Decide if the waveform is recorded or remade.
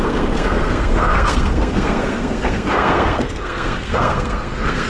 remade